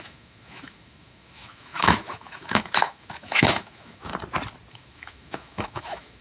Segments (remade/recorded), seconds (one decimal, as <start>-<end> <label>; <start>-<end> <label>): 0.0-4.1 remade; 4.1-4.7 recorded; 4.7-6.2 remade